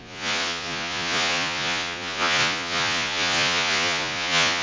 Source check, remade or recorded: remade